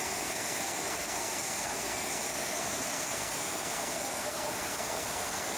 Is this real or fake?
fake